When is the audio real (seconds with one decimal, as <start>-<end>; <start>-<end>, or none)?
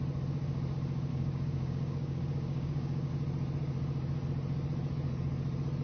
0.0-1.1; 3.1-5.8